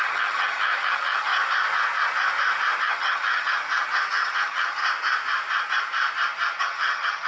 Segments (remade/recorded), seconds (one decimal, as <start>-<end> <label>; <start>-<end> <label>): 0.0-1.3 remade; 1.3-2.8 recorded; 2.8-3.6 remade; 3.6-4.1 recorded; 4.1-4.8 remade; 4.8-6.6 recorded; 6.6-7.3 remade